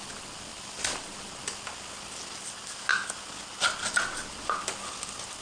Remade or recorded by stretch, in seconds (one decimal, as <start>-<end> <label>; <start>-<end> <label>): 0.0-0.5 recorded; 0.5-1.1 remade; 1.1-5.4 recorded